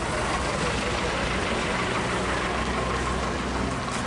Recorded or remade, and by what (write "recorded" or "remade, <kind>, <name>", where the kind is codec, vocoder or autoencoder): recorded